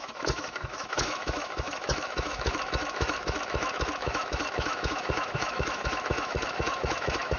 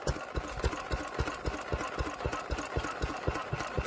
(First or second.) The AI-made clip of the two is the first